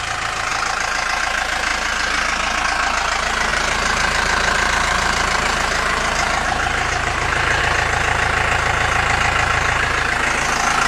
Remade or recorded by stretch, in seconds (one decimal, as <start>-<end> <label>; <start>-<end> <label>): 0.0-3.5 recorded; 3.5-7.6 remade; 7.6-10.9 recorded